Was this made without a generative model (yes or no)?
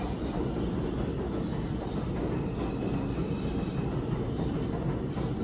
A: yes